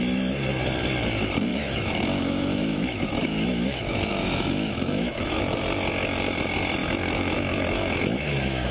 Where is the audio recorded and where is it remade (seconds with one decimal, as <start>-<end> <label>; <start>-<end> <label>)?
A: 0.0-1.5 recorded; 1.5-5.4 remade; 5.4-6.8 recorded; 6.8-8.7 remade